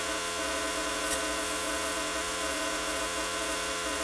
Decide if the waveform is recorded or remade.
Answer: remade